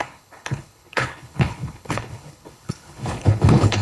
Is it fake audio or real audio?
fake